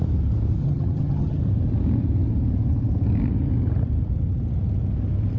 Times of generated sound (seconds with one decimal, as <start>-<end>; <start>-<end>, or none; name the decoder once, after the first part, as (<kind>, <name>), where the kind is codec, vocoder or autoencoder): 0.6-1.4 (vocoder, HiFi-GAN)

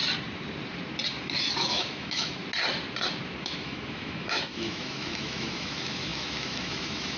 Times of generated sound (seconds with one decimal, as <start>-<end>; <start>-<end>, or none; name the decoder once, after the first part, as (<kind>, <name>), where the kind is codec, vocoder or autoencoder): 1.2-2.4 (autoencoder, DAC-VAE); 3.4-7.2

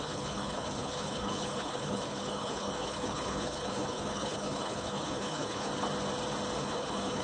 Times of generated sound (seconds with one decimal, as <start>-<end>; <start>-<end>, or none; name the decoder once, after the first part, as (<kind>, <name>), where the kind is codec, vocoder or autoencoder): 0.0-5.7 (codec, HILCodec); 6.6-7.2

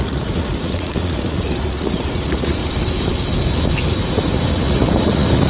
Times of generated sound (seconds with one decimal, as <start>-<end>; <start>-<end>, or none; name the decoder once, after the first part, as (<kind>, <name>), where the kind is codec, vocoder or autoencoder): 0.0-2.6 (vocoder, Vocos); 4.1-5.5

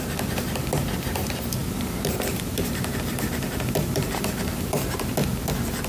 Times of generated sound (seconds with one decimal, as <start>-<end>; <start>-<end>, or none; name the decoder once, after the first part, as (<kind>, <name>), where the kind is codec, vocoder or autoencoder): 1.6-5.1 (vocoder, BigVGAN v2)

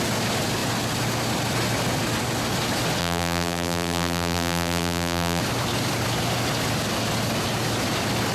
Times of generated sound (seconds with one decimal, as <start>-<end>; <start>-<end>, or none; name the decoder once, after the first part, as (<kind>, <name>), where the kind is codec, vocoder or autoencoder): 3.0-5.4 (vocoder, BigVGAN v2)